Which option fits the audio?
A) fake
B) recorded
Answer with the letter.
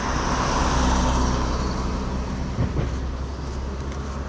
B